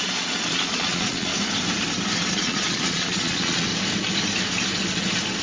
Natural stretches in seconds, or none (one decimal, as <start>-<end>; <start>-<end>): 1.3-2.3; 3.7-5.4